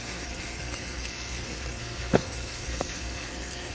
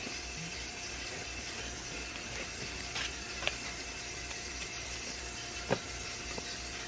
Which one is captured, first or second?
second